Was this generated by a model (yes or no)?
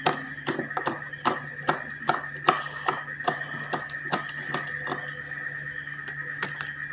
no